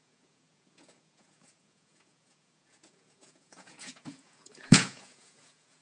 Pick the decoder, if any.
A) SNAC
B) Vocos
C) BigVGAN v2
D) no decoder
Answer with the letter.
B